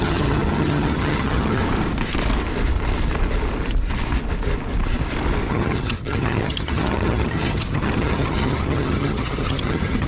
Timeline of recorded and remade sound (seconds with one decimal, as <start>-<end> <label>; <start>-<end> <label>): 0.0-1.6 remade; 1.6-5.5 recorded; 5.5-10.1 remade